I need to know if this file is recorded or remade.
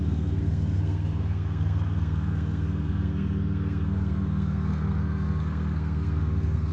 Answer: remade